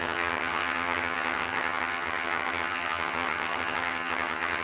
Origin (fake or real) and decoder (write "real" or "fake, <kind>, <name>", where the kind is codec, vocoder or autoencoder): fake, vocoder, HiFi-GAN